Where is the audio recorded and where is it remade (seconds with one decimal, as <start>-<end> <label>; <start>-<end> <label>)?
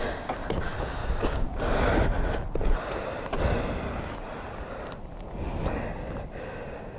0.0-1.0 recorded; 1.0-1.6 remade; 1.6-7.0 recorded